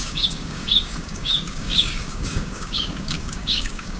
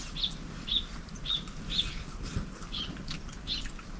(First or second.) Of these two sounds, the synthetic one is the first